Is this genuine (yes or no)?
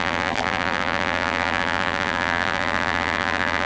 no